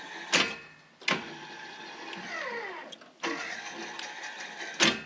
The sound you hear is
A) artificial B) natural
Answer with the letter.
B